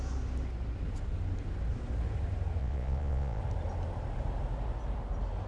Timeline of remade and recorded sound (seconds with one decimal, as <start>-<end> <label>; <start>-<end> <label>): 0.0-2.6 recorded; 2.6-3.4 remade; 3.4-5.5 recorded